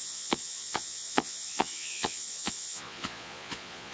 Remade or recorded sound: remade